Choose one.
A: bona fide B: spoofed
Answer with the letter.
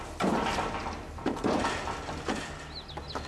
A